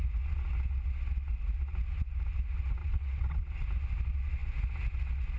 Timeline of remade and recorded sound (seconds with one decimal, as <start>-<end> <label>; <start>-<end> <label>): 0.0-2.8 recorded; 2.8-3.5 remade; 3.5-5.4 recorded